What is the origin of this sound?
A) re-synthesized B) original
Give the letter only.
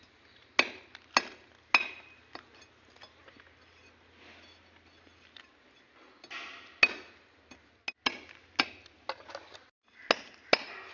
B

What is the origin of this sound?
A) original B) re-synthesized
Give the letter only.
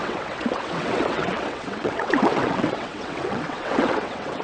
B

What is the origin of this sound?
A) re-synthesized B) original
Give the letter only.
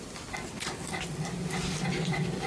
B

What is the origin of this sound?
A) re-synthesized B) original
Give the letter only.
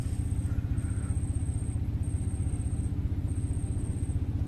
B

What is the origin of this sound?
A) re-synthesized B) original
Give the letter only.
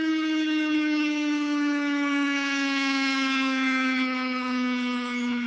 A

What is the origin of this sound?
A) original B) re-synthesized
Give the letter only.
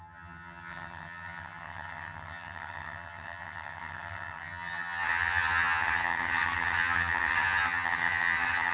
B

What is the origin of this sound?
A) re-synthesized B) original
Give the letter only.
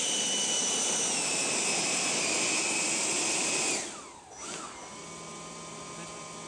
B